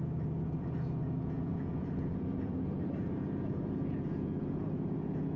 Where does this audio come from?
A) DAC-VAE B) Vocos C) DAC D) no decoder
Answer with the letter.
B